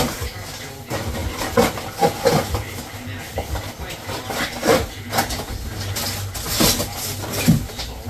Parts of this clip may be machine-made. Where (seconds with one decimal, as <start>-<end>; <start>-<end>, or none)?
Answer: 1.2-1.7